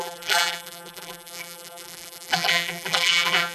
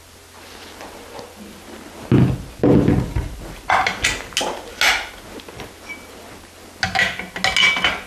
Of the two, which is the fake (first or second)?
first